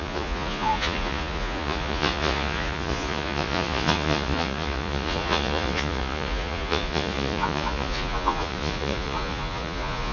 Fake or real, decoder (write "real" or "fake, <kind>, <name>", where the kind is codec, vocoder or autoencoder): fake, vocoder, Vocos